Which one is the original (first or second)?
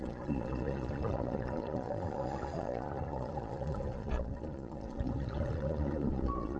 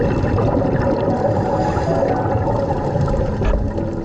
second